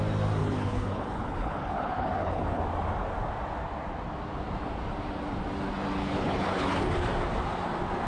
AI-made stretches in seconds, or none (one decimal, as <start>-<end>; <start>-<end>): 0.4-2.6; 6.0-6.8